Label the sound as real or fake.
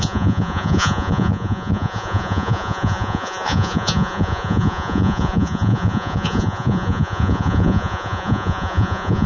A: fake